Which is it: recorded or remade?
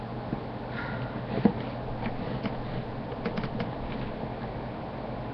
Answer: recorded